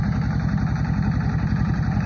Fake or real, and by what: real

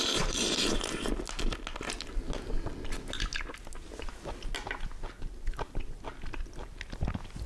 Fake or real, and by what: real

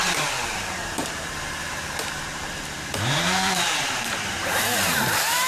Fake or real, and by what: fake, vocoder, BigVGAN v2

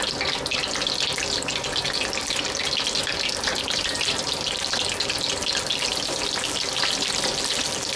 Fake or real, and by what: real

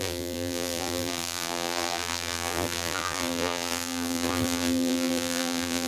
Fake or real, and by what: fake, vocoder, BigVGAN v2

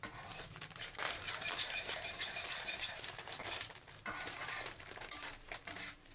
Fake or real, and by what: fake, vocoder, BigVGAN v2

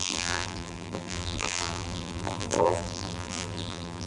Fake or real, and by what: fake, vocoder, BigVGAN v2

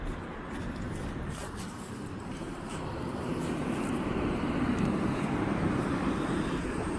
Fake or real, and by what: fake, vocoder, BigVGAN v2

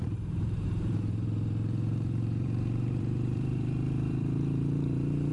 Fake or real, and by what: fake, vocoder, BigVGAN v2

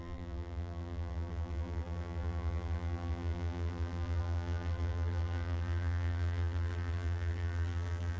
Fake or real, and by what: fake, vocoder, BigVGAN v2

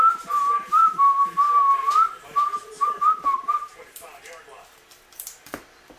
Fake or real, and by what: fake, vocoder, BigVGAN v2